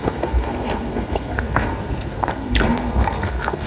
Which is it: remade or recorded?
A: remade